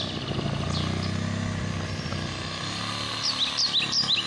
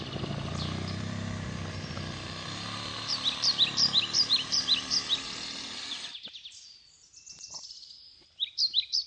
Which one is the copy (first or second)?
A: second